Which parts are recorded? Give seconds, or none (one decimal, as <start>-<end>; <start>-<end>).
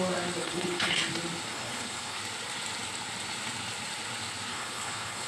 0.0-0.4; 1.0-1.5; 2.2-4.5